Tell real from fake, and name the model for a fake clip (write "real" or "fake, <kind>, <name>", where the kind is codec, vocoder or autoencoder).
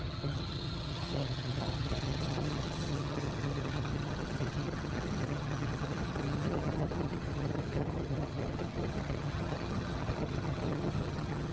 fake, vocoder, HiFi-GAN